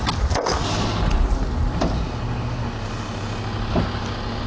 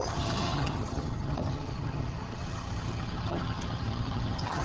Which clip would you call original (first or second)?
first